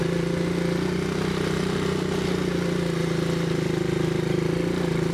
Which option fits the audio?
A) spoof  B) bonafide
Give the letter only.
B